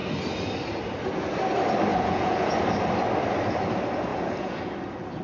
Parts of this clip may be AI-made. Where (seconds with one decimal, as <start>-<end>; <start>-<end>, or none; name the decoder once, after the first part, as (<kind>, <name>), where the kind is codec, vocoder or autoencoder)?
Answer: 1.9-2.6 (vocoder, Vocos); 4.1-4.7